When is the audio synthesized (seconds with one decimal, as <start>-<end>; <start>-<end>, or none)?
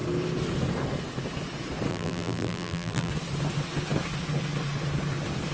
1.9-3.1